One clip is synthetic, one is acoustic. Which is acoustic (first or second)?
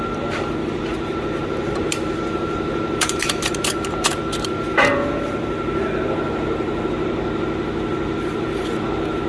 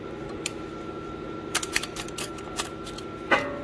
second